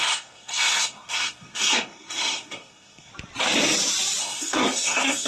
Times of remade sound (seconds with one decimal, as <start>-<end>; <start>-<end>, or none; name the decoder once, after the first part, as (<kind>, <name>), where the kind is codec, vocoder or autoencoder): 0.0-3.1 (codec, SNAC); 4.2-5.3

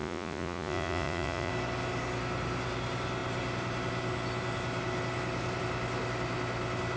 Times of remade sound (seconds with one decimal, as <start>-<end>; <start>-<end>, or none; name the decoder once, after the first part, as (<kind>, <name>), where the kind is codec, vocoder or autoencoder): 0.0-1.5 (vocoder, Vocos)

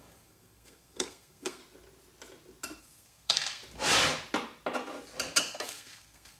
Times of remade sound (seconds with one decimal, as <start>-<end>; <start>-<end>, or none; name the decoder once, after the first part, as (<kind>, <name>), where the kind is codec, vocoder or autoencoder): 0.0-1.6 (codec, SNAC); 2.8-3.6; 5.4-6.4

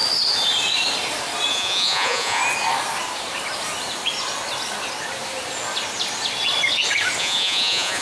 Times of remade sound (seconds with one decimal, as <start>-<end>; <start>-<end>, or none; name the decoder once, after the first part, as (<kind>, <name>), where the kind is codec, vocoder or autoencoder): 1.5-2.4 (vocoder, Vocos); 7.2-8.0

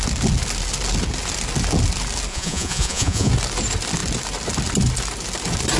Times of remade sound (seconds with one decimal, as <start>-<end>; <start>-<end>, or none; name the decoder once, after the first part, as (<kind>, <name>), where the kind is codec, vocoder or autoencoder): 2.3-3.3 (vocoder, Vocos)

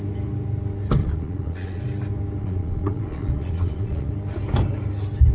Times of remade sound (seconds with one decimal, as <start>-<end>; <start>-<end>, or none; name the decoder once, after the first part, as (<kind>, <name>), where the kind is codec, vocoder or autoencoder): 1.0-1.8 (vocoder, Vocos); 2.4-4.1

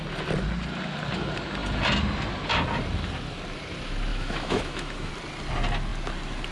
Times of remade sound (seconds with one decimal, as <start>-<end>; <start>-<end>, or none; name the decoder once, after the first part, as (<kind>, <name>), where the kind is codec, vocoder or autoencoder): 4.1-5.1 (autoencoder, DAC-VAE)